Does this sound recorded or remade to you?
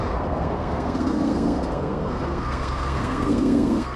remade